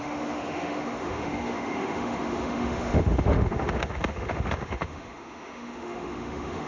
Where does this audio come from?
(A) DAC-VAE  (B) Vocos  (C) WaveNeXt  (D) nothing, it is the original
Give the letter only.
A